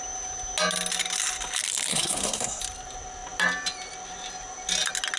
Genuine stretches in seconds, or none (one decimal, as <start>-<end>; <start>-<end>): 0.0-1.9; 2.6-5.2